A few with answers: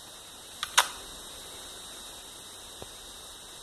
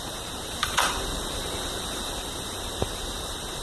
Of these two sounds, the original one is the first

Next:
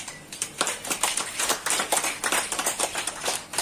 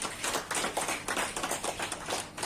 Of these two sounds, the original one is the second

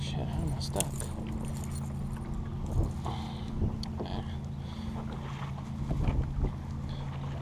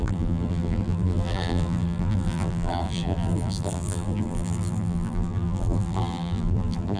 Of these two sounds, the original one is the first